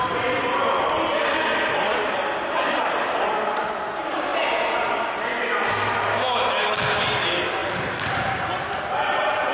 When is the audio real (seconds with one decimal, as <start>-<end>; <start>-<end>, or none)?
0.0-7.6; 8.5-9.5